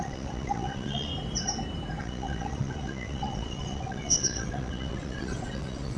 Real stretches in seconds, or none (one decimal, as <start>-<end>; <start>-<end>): 1.1-2.0